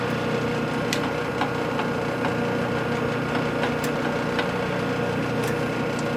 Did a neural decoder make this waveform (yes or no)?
no